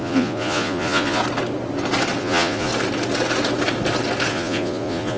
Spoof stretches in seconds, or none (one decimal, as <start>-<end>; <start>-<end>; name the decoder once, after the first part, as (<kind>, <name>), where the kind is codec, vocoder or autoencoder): 0.0-1.2 (vocoder, Vocos); 2.2-2.7; 4.3-5.2